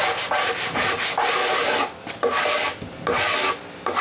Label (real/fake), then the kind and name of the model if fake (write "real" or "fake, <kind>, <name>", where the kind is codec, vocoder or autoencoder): real